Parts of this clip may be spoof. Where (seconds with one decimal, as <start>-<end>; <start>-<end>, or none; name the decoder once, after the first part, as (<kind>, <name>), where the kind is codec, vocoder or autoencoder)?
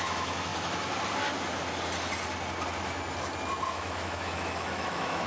0.0-0.5 (autoencoder, DAC-VAE); 3.7-5.3